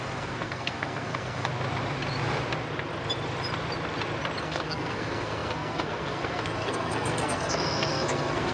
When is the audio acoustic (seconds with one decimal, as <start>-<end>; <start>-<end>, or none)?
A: 1.5-4.4